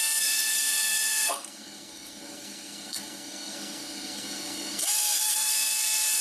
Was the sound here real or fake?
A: fake